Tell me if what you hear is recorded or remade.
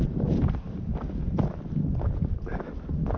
recorded